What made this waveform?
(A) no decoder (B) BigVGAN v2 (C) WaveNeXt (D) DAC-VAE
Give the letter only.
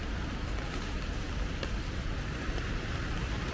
A